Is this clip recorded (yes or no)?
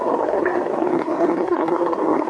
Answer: no